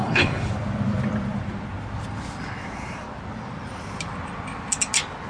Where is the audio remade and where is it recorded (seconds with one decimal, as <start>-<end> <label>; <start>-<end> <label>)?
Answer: 0.0-0.5 remade; 0.5-5.3 recorded